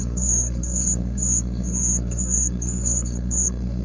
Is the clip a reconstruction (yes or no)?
yes